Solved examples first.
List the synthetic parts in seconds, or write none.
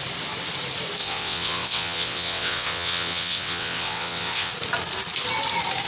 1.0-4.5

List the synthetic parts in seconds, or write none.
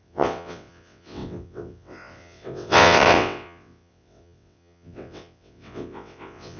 0.0-6.6